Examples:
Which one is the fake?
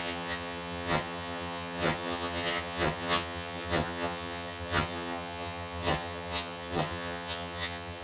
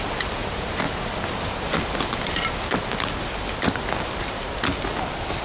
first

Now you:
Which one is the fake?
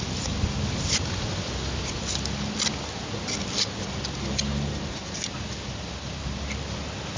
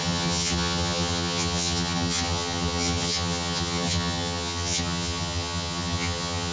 second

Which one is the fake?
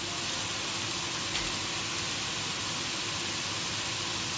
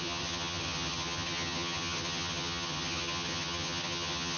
second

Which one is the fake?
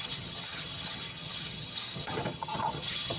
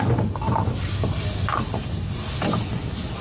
first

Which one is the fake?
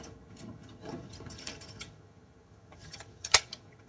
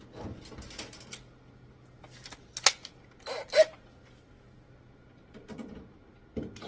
first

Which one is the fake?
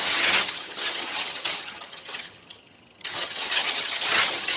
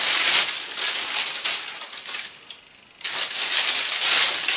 first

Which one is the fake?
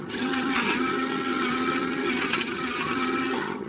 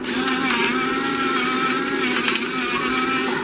first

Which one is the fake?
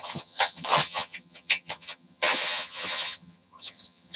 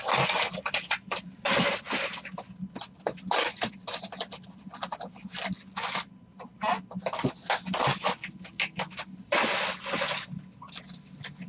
first